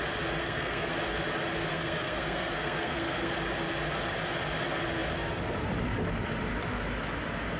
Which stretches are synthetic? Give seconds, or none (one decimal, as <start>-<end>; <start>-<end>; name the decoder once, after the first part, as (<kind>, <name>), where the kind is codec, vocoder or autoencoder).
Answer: 0.4-0.9 (codec, SNAC); 1.7-3.3